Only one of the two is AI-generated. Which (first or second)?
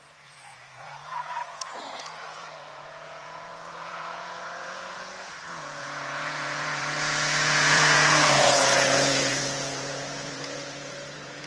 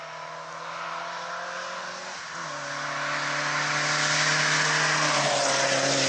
first